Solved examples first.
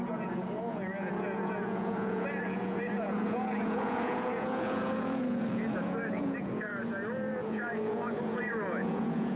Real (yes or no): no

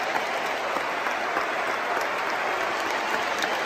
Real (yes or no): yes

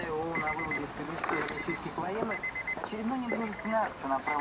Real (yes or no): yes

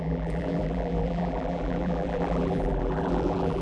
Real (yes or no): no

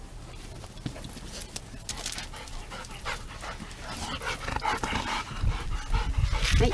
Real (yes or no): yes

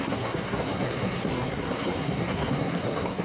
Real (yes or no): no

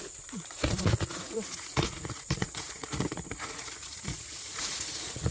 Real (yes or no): no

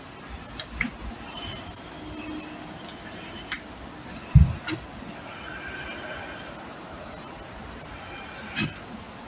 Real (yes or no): yes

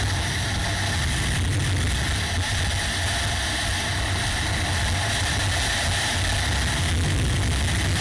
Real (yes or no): yes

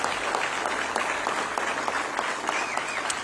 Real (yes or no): yes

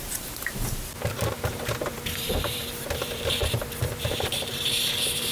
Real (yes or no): no